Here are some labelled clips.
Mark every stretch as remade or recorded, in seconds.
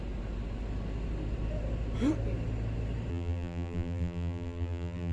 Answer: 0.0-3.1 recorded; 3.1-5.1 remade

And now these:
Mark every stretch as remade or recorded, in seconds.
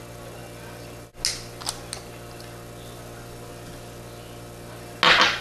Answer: 0.0-5.4 recorded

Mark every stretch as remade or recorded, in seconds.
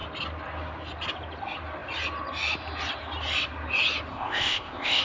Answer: 0.0-4.1 recorded; 4.1-5.0 remade